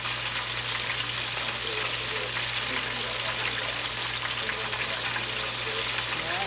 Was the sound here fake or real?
real